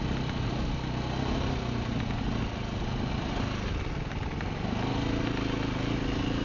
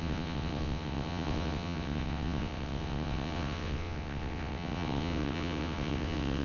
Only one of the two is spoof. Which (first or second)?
second